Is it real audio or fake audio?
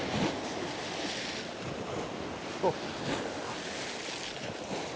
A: real